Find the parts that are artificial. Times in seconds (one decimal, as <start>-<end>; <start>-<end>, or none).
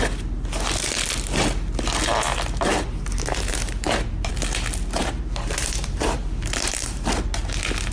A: 2.7-4.3; 5.0-7.1